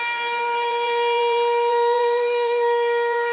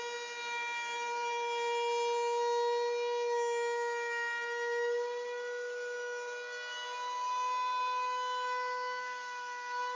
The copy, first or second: first